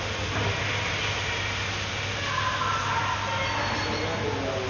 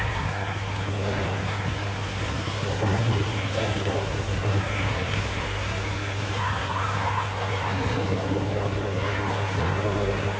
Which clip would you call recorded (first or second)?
first